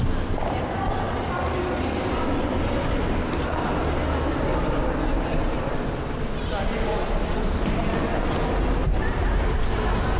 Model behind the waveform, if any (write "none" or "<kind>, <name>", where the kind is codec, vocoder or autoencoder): none